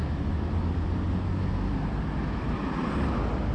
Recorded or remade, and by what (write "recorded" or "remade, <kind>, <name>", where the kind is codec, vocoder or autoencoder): recorded